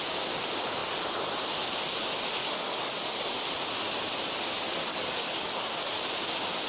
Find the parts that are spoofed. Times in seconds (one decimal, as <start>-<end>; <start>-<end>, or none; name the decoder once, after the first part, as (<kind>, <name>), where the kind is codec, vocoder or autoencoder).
2.4-3.2 (codec, DAC); 4.9-6.0